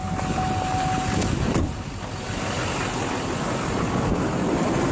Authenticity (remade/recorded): recorded